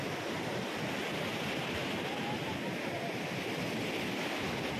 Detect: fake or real real